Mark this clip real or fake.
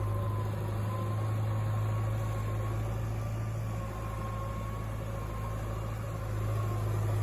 real